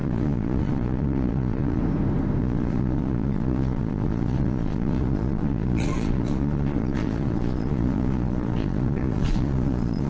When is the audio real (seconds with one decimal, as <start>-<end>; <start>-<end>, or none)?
1.8-2.4